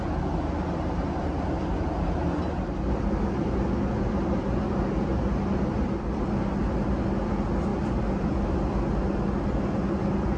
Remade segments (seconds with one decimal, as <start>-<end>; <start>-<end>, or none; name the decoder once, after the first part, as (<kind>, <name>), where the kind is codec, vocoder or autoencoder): none